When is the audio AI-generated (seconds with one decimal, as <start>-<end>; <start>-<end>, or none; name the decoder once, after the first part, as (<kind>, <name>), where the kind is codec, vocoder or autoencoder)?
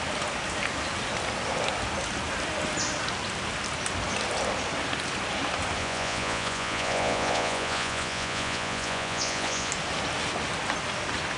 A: 5.8-9.7 (vocoder, Vocos)